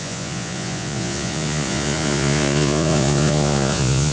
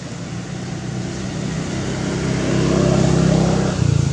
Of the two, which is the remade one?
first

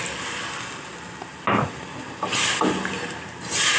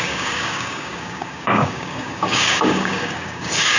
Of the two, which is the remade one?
second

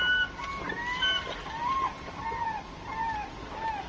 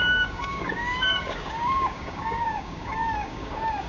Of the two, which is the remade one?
second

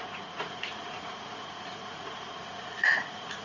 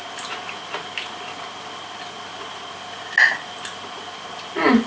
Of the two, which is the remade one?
first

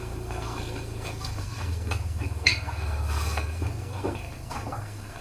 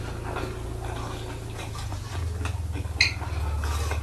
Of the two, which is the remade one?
first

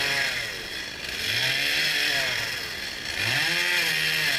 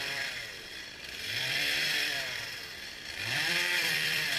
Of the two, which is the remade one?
second